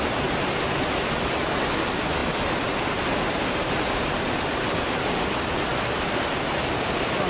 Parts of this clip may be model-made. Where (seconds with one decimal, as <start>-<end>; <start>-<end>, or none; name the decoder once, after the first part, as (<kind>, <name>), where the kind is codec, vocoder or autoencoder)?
none